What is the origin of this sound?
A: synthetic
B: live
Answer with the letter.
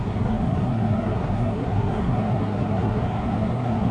A